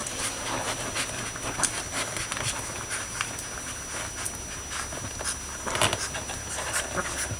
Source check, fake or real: real